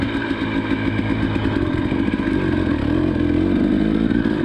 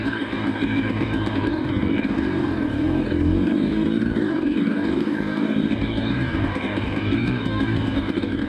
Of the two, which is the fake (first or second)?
second